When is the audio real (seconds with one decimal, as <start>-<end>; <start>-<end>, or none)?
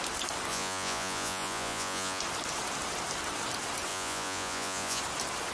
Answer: 0.0-0.5; 2.2-3.9; 5.0-5.5